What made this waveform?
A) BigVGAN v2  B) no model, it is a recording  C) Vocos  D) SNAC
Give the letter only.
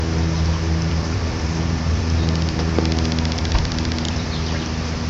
A